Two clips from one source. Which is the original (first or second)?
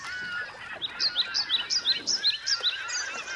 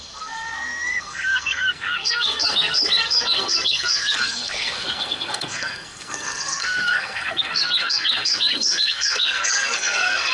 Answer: first